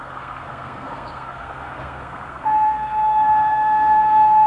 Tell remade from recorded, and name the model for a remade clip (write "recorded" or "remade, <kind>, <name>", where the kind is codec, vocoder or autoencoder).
remade, codec, SNAC